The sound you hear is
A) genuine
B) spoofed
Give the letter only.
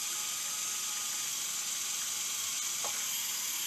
A